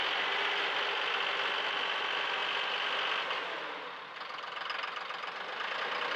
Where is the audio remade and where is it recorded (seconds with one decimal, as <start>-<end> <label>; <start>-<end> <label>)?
0.0-6.2 recorded